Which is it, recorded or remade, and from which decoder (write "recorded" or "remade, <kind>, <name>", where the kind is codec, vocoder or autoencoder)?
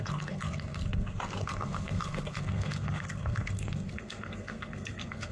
remade, codec, SNAC